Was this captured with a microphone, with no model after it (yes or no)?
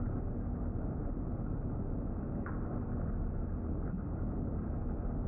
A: yes